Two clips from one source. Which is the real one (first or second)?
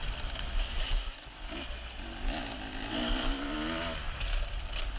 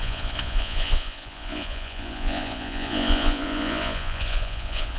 first